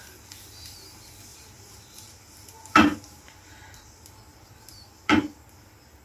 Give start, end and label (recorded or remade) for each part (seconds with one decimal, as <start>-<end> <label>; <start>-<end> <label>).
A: 0.0-1.3 recorded; 1.3-3.8 remade; 3.8-4.3 recorded; 4.3-5.2 remade; 5.2-6.0 recorded